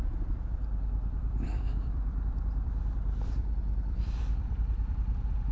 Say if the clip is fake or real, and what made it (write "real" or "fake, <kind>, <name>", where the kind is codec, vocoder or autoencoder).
fake, vocoder, BigVGAN v2